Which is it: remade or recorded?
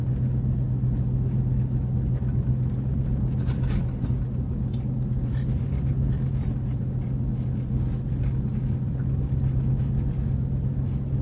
recorded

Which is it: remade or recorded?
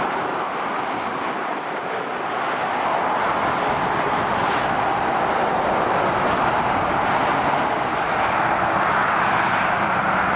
recorded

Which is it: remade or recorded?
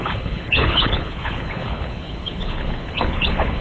remade